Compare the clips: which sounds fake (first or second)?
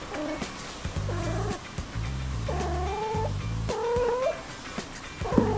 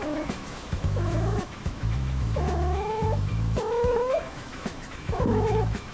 second